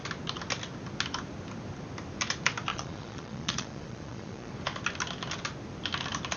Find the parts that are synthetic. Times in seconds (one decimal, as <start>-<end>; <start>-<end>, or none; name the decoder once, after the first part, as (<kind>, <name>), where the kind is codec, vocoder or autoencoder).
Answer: 2.7-4.5 (vocoder, Vocos)